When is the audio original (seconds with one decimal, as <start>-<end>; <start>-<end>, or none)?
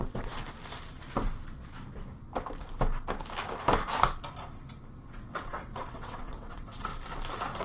0.4-5.0; 6.9-7.6